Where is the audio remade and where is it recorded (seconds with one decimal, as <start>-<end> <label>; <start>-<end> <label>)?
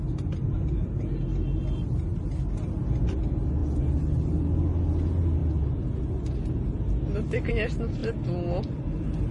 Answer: 0.0-9.3 recorded